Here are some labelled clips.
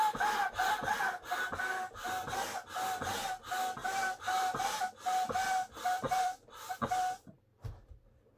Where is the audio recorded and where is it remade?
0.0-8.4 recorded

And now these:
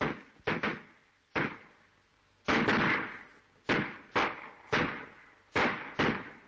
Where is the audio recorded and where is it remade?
0.0-6.5 recorded